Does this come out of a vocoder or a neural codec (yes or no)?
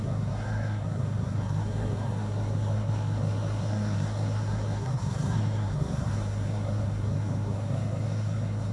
yes